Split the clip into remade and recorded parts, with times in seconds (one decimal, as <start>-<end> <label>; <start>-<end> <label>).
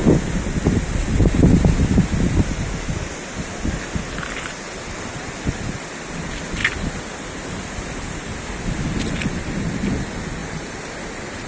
0.0-11.5 recorded